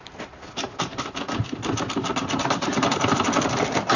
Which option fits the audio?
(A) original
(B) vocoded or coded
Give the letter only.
A